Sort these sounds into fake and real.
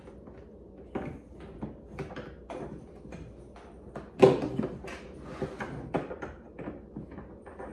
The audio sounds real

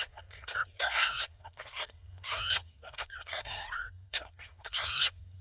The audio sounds fake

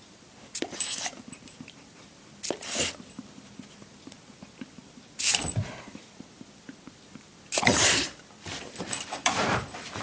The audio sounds fake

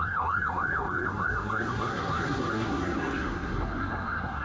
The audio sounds fake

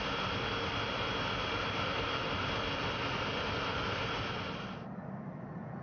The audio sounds real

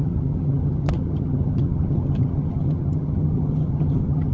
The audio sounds fake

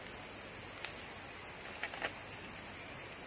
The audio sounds real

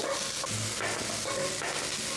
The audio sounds real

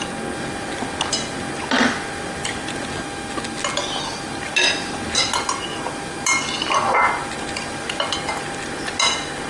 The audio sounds real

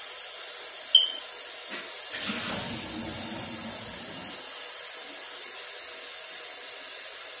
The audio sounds real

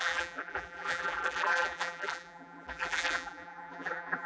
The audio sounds fake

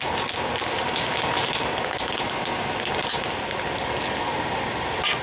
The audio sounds real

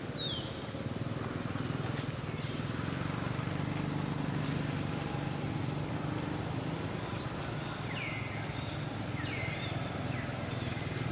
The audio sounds real